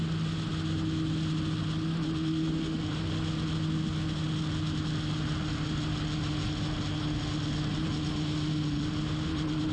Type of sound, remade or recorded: recorded